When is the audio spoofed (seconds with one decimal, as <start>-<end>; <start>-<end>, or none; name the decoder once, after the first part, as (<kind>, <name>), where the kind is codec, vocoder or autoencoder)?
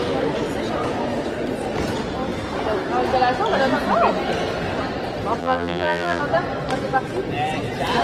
5.4-6.2 (vocoder, BigVGAN v2)